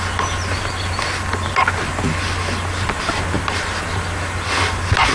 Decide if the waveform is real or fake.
real